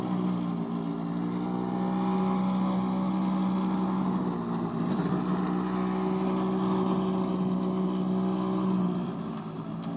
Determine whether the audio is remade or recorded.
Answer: recorded